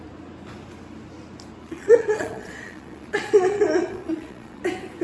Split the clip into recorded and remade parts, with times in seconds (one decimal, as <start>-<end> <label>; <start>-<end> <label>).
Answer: 0.0-1.6 recorded; 1.6-4.6 remade; 4.6-5.0 recorded